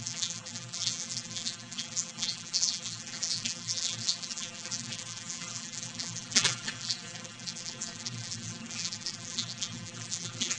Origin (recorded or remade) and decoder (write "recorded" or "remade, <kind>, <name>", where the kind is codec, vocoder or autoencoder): remade, vocoder, BigVGAN v2